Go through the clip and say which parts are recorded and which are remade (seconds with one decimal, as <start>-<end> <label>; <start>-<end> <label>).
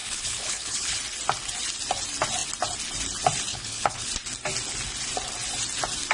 0.0-1.0 remade; 1.0-3.5 recorded; 3.5-4.1 remade; 4.1-6.1 recorded